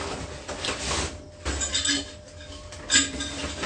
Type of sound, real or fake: real